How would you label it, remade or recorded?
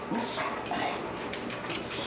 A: recorded